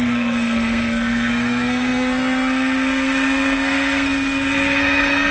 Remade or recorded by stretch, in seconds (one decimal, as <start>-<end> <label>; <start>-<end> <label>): 0.0-5.3 remade